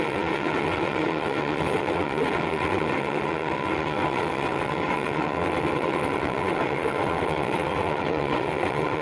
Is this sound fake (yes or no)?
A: yes